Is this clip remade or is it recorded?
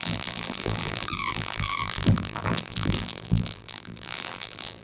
remade